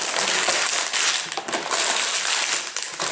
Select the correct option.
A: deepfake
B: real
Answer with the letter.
B